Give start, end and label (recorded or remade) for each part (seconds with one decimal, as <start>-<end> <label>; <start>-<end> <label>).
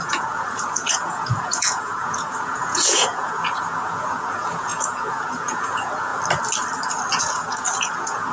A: 0.0-6.1 remade; 6.1-7.2 recorded; 7.2-8.3 remade